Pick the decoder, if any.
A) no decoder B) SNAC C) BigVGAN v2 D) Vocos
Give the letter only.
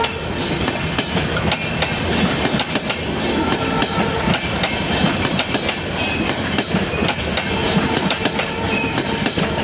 A